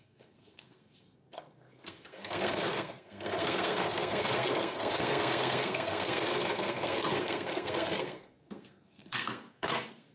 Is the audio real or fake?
fake